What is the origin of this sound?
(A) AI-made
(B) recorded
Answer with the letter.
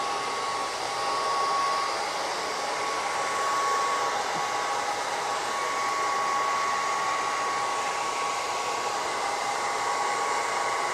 B